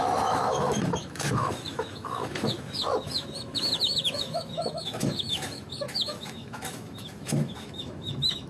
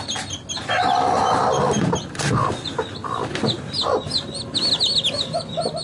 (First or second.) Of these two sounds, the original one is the second